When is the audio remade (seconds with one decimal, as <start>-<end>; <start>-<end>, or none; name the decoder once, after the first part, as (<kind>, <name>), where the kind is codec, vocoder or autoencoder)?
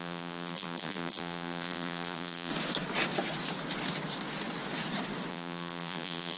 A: 0.0-2.5 (vocoder, BigVGAN v2); 5.3-6.4